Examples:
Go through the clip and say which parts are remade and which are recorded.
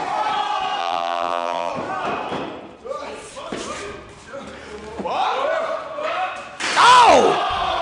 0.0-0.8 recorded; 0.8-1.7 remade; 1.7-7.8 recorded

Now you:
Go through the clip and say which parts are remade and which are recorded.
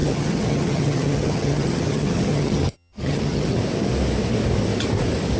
0.0-3.6 remade; 3.6-5.4 recorded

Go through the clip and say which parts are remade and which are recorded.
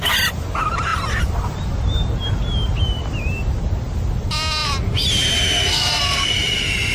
0.0-5.7 recorded; 5.7-6.3 remade; 6.3-6.9 recorded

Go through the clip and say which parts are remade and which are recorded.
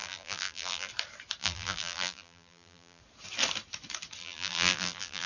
0.0-0.9 remade; 0.9-1.4 recorded; 1.4-3.0 remade; 3.0-4.2 recorded; 4.2-5.3 remade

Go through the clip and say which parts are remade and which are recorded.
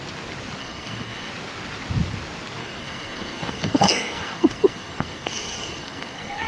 0.0-0.6 recorded; 0.6-1.3 remade; 1.3-2.6 recorded; 2.6-6.5 remade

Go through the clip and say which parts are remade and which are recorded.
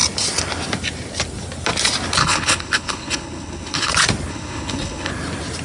0.0-2.2 recorded; 2.2-3.9 remade; 3.9-4.3 recorded; 4.3-5.1 remade; 5.1-5.6 recorded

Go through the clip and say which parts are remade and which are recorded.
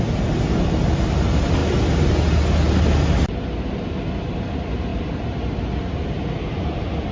0.0-7.1 recorded